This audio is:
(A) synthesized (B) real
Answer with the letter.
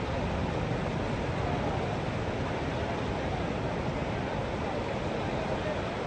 B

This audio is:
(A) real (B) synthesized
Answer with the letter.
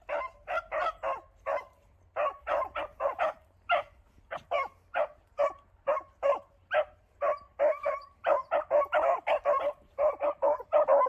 A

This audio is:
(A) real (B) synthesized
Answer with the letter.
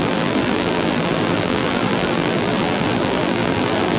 B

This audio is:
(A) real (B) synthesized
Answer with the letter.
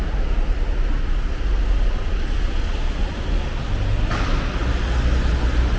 A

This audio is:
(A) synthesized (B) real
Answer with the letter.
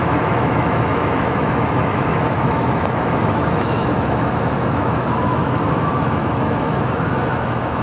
A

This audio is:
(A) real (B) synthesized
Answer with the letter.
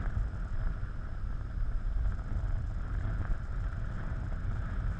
A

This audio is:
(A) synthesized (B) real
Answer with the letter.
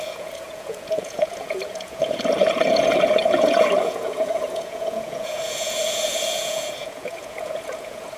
A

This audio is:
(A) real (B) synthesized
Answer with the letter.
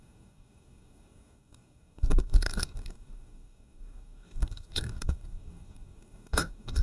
B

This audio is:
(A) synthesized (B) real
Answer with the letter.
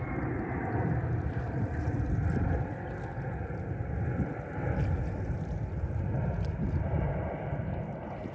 B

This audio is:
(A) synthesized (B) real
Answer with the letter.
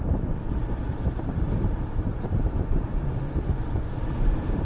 A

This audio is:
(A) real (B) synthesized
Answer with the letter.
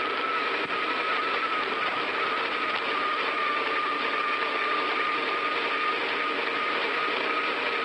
A